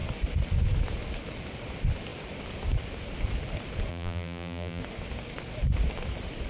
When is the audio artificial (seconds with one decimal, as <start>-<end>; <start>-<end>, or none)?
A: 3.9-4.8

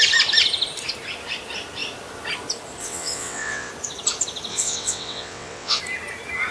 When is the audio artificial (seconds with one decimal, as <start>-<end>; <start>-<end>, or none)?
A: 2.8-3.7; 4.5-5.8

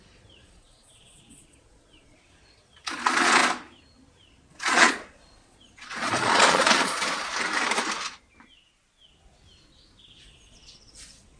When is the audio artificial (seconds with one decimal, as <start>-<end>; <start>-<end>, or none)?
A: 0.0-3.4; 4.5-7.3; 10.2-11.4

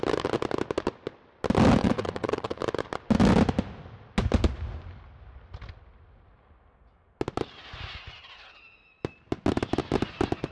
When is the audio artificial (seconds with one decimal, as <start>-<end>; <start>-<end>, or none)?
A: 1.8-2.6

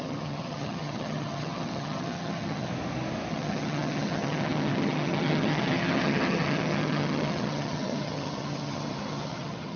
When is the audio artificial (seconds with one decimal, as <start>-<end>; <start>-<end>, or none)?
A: 0.0-2.7; 3.3-9.8

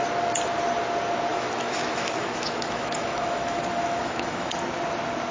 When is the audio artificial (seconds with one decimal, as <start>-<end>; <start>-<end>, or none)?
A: 1.3-4.5